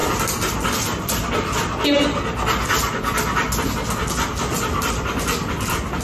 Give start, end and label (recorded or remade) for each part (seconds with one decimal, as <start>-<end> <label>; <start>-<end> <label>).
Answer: 0.0-6.0 recorded